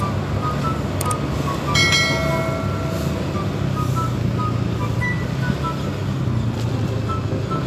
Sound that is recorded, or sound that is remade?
recorded